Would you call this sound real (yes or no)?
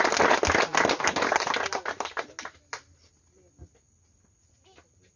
yes